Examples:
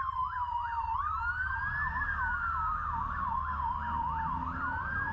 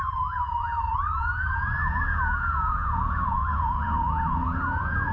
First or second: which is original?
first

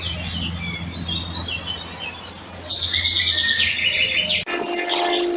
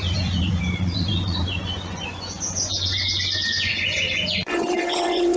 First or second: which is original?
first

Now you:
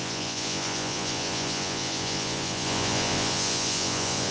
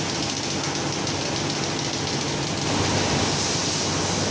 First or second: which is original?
second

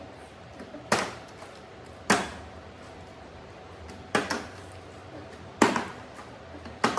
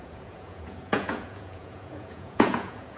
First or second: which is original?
first